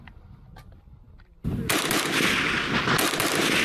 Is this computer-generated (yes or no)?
no